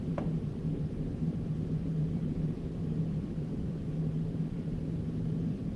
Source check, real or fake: fake